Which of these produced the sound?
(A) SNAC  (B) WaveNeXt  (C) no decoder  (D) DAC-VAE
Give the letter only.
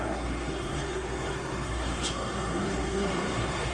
A